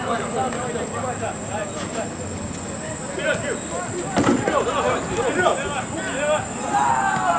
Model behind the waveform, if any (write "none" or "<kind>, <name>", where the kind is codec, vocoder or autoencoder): none